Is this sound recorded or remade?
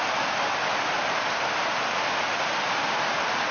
recorded